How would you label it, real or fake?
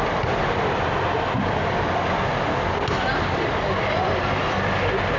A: real